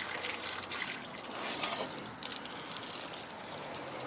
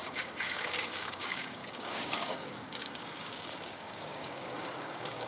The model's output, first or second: second